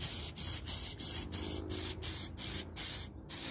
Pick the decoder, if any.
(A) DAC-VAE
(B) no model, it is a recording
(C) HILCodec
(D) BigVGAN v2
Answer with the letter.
B